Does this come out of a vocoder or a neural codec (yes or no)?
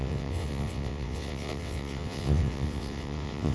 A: yes